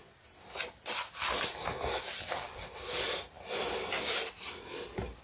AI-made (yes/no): no